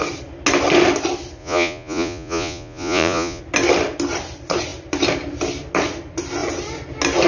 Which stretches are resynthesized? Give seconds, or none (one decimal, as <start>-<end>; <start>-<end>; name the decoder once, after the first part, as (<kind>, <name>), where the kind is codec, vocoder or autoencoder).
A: 1.4-3.4 (vocoder, Vocos)